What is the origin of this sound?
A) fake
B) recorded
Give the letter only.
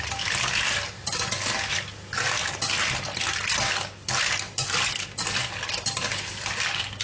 B